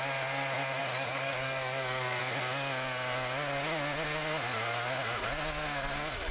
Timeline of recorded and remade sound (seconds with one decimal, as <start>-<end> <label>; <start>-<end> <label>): 0.0-0.8 recorded; 0.8-2.2 remade; 2.2-6.3 recorded